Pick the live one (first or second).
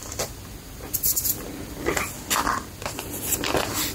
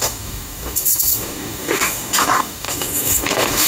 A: first